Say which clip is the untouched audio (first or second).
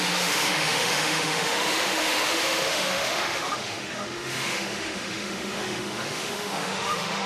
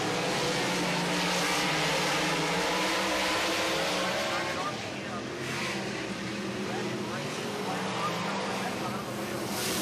second